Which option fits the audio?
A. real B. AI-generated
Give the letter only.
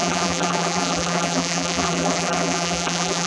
B